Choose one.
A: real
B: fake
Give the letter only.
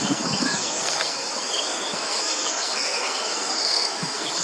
B